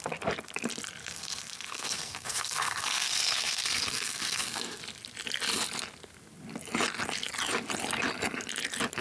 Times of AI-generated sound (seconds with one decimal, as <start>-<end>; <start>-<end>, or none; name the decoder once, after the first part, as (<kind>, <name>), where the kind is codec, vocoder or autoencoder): 1.0-4.8 (codec, SNAC)